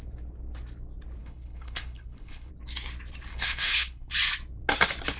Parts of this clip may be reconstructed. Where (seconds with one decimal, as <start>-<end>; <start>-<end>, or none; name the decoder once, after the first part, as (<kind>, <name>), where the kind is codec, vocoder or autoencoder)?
1.2-2.5 (codec, HILCodec); 3.3-4.1